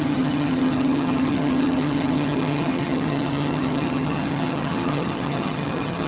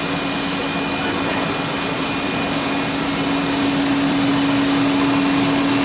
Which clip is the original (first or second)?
second